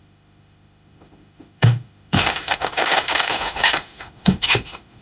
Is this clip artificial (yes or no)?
yes